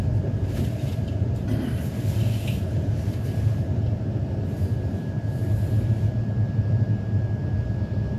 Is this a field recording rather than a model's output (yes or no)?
no